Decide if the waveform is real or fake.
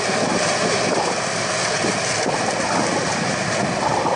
real